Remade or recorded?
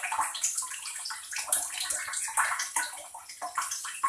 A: remade